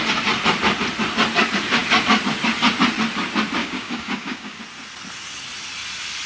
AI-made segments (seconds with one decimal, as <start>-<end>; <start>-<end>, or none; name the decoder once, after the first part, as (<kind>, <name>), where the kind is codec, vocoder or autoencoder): 3.6-4.6 (codec, DAC)